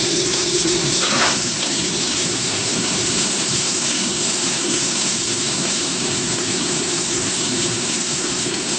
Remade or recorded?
remade